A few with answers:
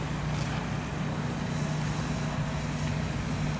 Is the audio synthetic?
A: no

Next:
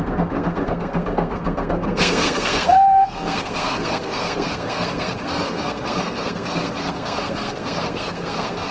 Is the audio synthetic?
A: yes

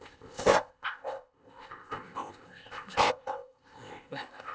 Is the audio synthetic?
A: yes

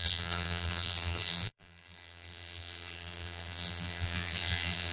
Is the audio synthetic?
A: yes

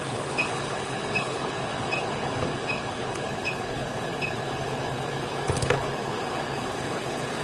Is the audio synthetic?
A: yes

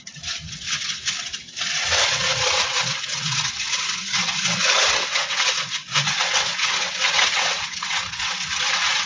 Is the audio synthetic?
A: yes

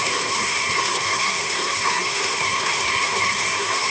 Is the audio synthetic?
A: yes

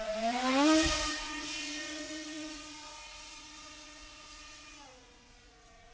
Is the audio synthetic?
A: yes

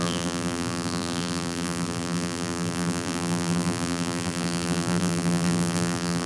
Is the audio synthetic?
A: yes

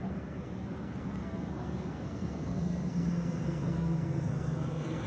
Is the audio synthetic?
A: yes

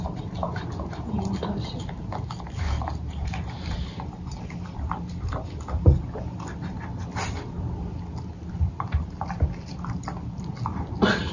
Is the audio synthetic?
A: no